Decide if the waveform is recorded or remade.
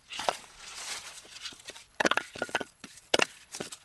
remade